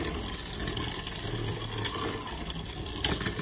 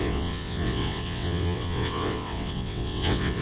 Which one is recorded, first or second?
first